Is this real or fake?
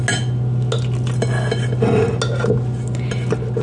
real